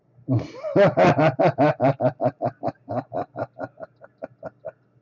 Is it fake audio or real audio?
real